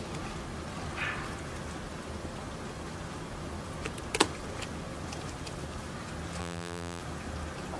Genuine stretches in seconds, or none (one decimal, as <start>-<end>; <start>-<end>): 0.0-6.4; 7.0-7.8